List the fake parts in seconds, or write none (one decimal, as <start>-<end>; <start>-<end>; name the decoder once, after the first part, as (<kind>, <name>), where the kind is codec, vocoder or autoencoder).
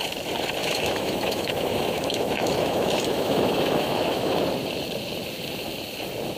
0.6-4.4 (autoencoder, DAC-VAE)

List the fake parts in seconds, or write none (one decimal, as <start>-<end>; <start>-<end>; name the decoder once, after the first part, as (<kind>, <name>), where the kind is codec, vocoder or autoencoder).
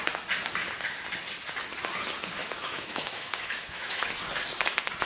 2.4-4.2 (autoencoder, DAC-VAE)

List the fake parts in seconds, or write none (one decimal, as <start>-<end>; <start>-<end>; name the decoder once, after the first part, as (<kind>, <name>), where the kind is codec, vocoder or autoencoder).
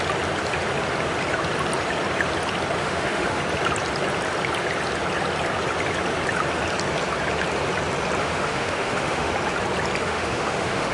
2.8-3.4 (autoencoder, DAC-VAE); 8.2-9.3; 10.0-10.9